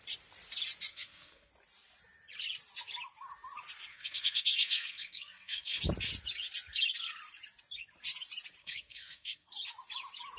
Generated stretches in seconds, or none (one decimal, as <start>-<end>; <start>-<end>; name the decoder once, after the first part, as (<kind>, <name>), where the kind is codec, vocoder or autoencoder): 0.9-1.5 (codec, SNAC); 3.9-5.8; 8.6-9.5